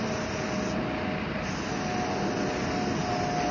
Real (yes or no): yes